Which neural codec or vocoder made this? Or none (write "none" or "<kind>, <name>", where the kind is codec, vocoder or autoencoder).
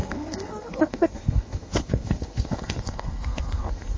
codec, SNAC